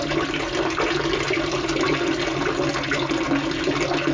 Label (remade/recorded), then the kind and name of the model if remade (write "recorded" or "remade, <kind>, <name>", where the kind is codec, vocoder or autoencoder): recorded